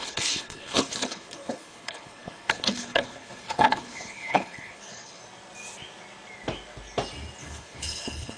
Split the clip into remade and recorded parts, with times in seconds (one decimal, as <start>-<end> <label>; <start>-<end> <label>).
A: 0.0-5.2 remade; 5.2-7.4 recorded; 7.4-8.4 remade